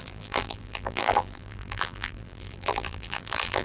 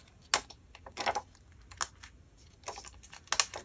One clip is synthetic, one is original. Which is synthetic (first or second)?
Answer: first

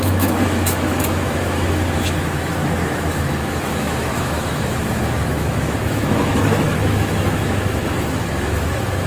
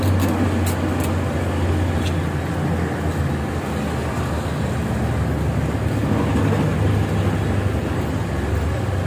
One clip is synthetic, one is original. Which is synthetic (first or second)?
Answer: first